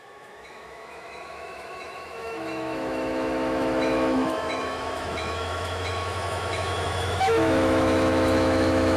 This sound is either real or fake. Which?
fake